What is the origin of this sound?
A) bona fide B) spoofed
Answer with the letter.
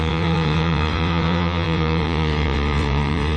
B